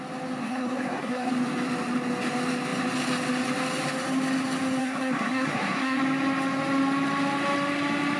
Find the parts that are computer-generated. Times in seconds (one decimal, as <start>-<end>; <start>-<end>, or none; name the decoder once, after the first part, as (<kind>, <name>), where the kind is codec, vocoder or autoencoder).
0.4-1.3 (codec, SNAC); 4.8-6.0